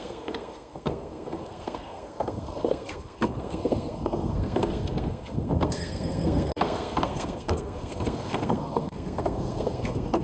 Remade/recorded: remade